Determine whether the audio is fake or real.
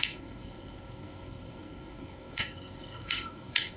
fake